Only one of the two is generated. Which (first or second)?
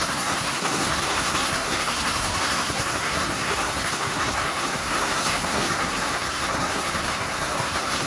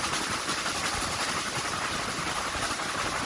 first